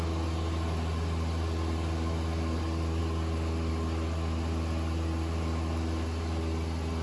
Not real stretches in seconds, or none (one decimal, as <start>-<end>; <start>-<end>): none